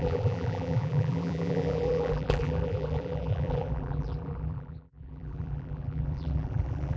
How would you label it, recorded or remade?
remade